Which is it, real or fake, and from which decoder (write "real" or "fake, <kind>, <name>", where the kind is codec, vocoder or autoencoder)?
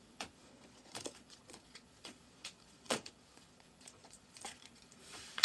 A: fake, vocoder, Vocos